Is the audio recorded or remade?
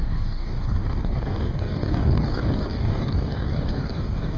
remade